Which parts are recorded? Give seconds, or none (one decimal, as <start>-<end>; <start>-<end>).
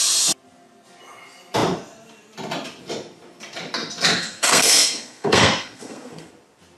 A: 0.0-4.2; 6.3-6.8